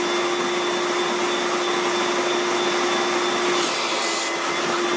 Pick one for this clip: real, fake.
real